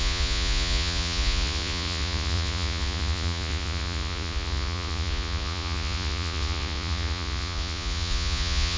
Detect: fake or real fake